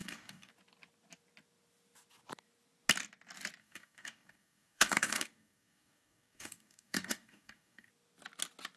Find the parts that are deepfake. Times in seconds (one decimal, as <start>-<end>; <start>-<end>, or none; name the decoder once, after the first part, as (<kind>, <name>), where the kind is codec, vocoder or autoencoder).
0.0-0.5 (codec, DAC); 3.6-7.9